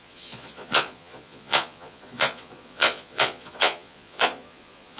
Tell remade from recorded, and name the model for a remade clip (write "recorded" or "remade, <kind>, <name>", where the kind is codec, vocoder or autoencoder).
remade, vocoder, Vocos